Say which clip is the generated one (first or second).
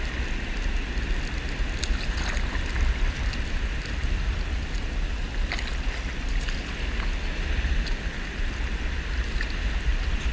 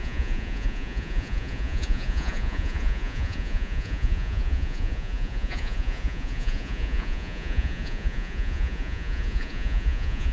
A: second